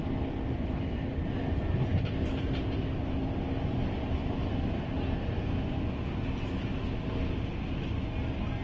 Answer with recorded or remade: recorded